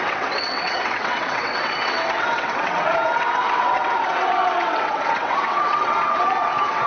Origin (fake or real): fake